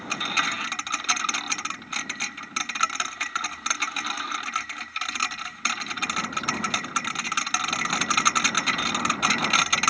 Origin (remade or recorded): recorded